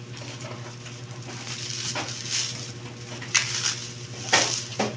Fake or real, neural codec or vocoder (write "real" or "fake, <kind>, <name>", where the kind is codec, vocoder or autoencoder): real